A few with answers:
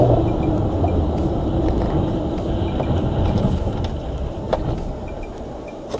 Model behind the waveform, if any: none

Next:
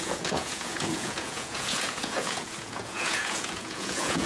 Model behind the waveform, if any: vocoder, Vocos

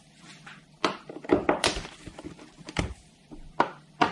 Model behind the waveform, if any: none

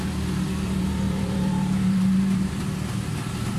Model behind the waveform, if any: none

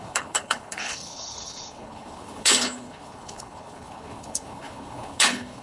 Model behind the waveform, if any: codec, HILCodec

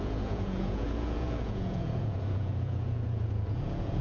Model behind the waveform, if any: vocoder, Vocos